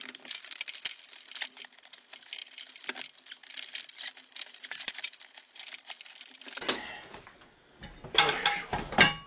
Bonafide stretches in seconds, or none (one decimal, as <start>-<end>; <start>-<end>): 0.0-9.3